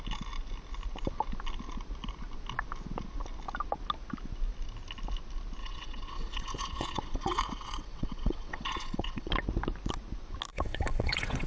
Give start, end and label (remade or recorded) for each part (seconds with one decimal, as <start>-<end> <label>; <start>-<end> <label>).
0.0-5.6 recorded; 5.6-9.3 remade; 9.3-10.5 recorded; 10.5-11.5 remade